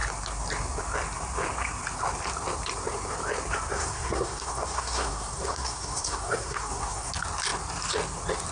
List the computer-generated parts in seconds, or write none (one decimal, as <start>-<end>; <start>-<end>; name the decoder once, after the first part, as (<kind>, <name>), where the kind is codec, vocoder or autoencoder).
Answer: 3.7-7.1 (codec, SNAC)